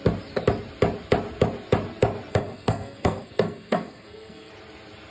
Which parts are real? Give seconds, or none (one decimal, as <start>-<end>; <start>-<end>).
0.0-2.3; 4.5-5.1